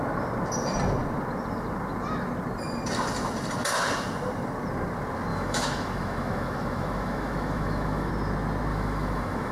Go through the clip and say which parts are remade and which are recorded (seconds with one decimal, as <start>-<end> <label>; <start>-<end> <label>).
0.0-5.3 recorded; 5.3-8.1 remade; 8.1-8.7 recorded; 8.7-9.5 remade